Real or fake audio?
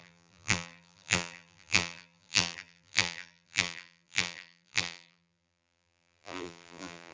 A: fake